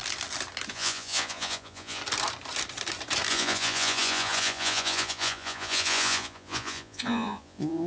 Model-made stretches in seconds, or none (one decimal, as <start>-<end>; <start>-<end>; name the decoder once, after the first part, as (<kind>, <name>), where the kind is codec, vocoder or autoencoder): 0.7-2.0 (vocoder, Vocos); 3.3-7.9